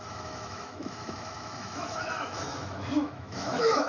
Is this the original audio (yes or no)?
no